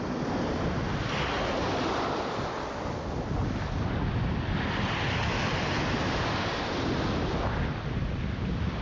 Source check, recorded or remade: recorded